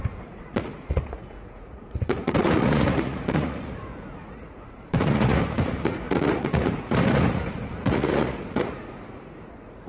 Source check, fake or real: fake